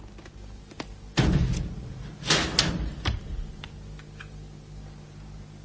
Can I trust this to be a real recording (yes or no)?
yes